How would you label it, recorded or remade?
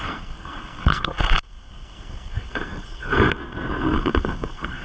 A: remade